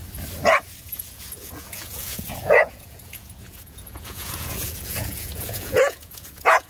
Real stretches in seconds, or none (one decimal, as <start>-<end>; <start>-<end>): 0.0-0.8